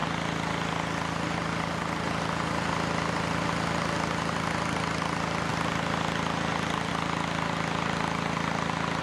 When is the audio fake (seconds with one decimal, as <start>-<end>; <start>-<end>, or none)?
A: none